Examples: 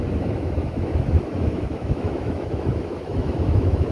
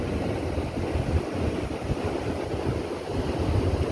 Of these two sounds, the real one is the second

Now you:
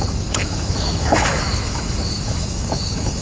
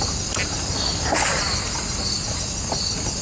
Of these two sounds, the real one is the second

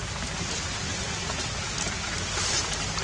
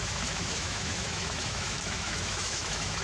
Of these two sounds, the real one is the first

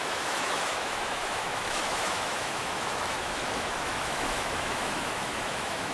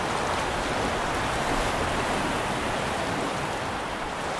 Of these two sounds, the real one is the second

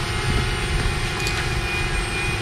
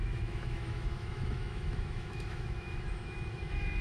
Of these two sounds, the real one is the first